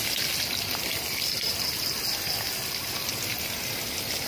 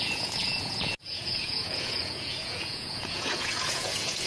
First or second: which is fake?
second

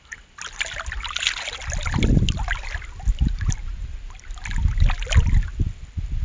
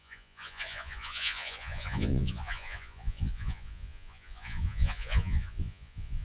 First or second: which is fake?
second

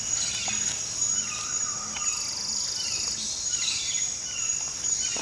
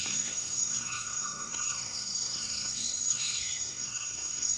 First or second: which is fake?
second